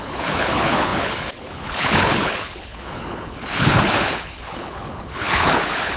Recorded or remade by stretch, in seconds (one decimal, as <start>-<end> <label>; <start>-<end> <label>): 0.0-6.0 remade